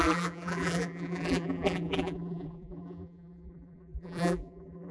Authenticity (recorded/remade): remade